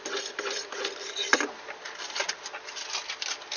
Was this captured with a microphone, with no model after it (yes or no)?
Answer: yes